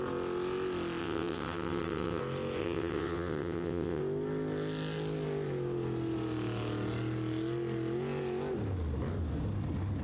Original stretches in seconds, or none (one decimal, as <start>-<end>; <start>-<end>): 0.0-1.0; 2.2-2.6; 4.0-10.0